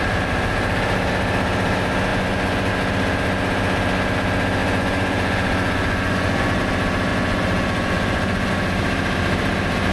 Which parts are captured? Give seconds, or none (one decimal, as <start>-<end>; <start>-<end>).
0.0-2.1; 2.7-4.6; 6.6-7.1; 8.5-9.9